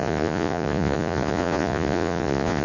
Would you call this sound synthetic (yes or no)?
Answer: yes